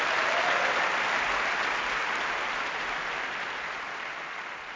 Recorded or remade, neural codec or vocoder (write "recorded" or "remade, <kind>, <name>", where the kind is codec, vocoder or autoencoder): recorded